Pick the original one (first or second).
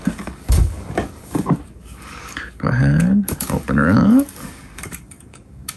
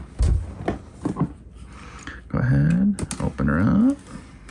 second